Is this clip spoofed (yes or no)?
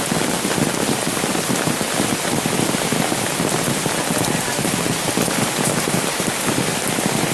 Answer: no